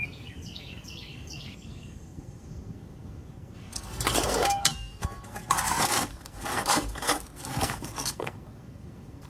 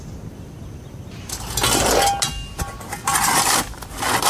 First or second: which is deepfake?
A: first